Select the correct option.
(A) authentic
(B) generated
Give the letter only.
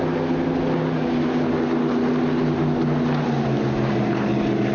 A